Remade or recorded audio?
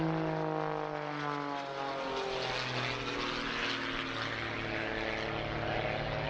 recorded